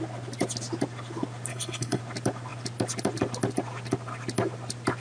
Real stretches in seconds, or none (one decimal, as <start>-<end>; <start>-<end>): 0.0-1.5; 2.0-5.0